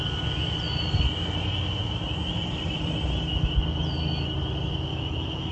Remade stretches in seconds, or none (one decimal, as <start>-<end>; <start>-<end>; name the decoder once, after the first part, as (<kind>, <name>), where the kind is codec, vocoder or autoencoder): 4.9-5.5 (autoencoder, DAC-VAE)